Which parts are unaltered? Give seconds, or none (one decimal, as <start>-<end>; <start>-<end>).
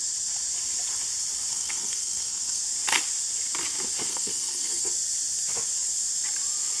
0.0-1.5; 2.6-4.1; 4.9-6.8